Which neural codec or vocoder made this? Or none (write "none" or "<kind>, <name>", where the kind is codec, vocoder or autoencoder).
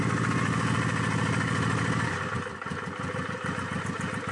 none